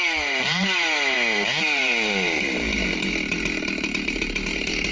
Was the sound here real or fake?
fake